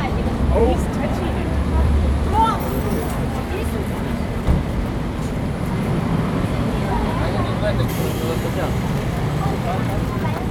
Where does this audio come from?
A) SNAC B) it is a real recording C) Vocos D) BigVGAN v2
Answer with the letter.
D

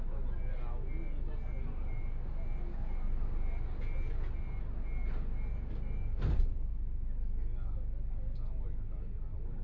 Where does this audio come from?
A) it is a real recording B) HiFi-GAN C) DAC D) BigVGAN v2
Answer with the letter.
A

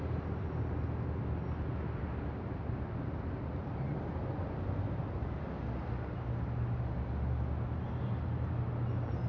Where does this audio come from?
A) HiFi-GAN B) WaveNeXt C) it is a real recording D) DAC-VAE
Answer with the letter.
C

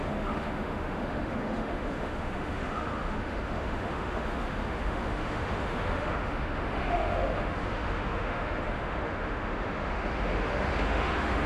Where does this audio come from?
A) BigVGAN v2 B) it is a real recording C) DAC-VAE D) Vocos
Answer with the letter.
C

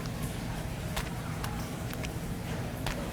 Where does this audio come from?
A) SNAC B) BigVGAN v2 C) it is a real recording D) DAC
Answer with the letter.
B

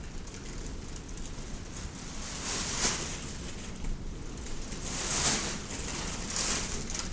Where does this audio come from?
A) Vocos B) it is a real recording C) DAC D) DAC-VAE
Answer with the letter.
B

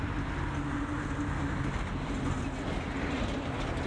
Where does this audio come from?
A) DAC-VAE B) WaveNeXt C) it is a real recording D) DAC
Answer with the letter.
C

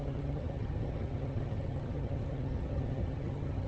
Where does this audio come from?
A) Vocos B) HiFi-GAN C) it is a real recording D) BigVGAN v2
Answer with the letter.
B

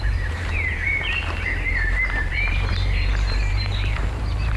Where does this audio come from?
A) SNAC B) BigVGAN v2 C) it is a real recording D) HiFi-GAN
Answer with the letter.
B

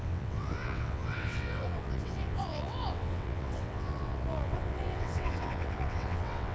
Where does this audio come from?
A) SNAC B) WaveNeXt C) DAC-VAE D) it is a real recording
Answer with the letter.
B